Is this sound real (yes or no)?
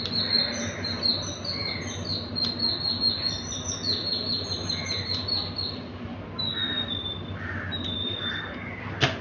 yes